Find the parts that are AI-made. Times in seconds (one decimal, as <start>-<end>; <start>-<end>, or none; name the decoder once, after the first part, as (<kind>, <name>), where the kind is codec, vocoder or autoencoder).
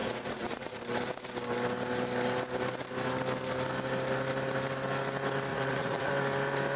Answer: 0.0-0.8 (vocoder, Vocos); 5.5-6.1